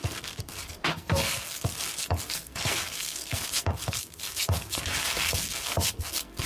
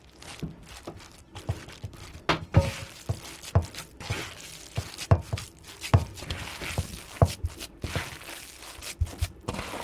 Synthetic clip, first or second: first